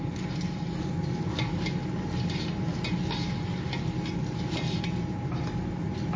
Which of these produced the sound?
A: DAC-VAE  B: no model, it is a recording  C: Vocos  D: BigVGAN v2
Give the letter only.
B